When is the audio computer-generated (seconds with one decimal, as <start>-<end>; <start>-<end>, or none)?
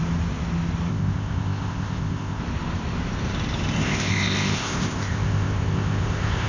0.9-2.4; 3.8-6.5